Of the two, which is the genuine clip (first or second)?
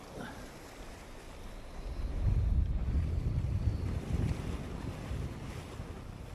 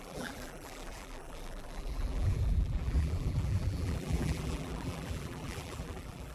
first